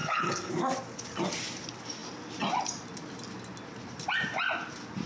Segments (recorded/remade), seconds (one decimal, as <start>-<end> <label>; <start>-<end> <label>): 0.0-0.5 remade; 0.5-5.1 recorded